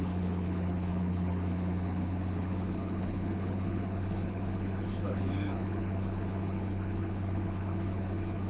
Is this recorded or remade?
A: remade